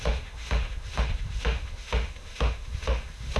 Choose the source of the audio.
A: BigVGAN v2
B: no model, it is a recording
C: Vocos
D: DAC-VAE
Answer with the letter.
D